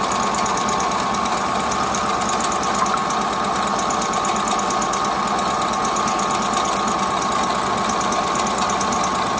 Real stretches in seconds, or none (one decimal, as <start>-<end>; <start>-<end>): 0.0-9.4